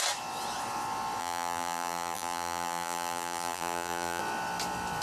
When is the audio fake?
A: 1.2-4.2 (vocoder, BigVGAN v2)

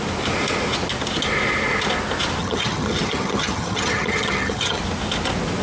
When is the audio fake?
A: 2.4-4.8 (vocoder, HiFi-GAN)

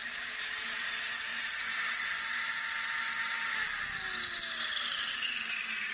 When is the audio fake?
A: 0.0-1.3 (vocoder, BigVGAN v2); 4.8-5.9

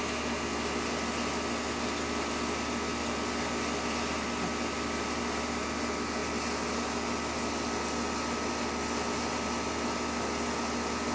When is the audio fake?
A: none